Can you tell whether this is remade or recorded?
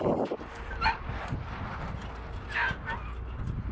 recorded